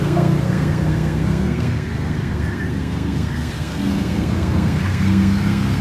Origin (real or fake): fake